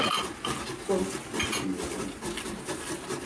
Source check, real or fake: real